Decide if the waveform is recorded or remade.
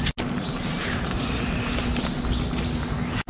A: recorded